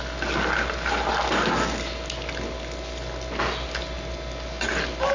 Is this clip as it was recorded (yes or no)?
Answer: yes